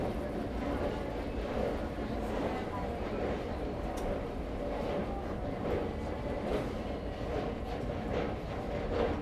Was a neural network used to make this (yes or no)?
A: no